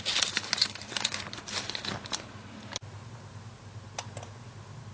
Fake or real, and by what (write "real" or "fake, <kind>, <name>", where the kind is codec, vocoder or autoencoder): real